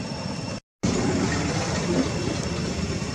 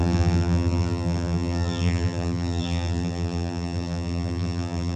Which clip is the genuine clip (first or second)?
first